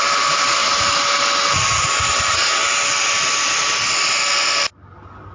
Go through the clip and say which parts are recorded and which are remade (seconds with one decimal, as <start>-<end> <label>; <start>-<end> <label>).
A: 0.0-5.3 recorded